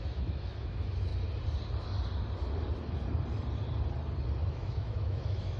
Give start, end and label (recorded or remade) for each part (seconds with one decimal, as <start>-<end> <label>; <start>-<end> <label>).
0.0-1.1 remade; 1.1-4.5 recorded; 4.5-5.6 remade